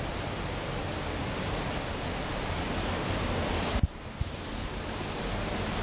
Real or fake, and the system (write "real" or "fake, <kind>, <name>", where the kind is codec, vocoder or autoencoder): real